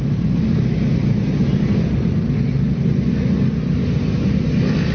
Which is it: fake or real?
real